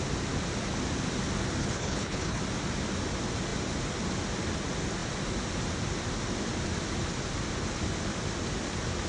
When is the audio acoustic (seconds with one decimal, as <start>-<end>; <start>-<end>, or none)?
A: 0.0-1.6; 2.4-9.1